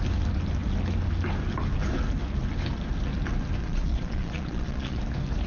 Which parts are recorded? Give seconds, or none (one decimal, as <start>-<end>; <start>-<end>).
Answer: 0.0-3.6; 5.0-5.5